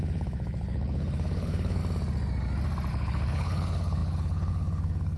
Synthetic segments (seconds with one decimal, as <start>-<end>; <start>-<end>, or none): 0.0-1.8; 2.9-5.2